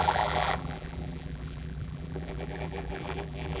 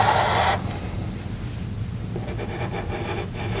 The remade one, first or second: first